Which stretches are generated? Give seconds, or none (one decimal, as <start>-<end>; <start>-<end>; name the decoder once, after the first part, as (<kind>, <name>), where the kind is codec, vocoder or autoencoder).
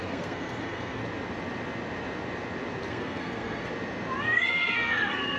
0.0-1.0 (codec, SNAC); 2.9-3.7; 4.2-5.4